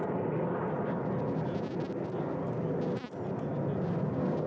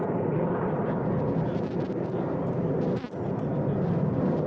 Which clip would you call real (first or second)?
first